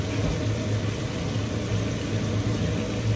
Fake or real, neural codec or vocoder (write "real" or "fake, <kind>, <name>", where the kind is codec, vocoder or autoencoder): real